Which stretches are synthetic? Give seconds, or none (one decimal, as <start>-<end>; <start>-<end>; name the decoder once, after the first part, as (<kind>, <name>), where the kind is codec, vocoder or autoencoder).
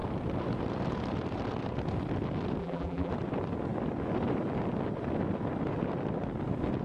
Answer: 2.6-3.1 (vocoder, BigVGAN v2)